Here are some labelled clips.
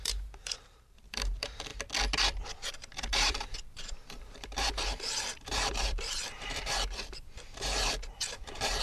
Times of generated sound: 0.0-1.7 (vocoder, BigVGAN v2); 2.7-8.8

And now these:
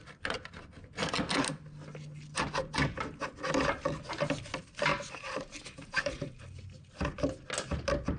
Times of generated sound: 4.9-6.4 (vocoder, BigVGAN v2)

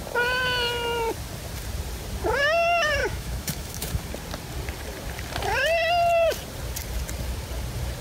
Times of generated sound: 3.0-4.0 (autoencoder, DAC-VAE)